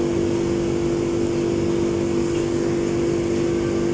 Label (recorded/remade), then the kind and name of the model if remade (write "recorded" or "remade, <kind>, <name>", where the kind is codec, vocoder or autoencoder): recorded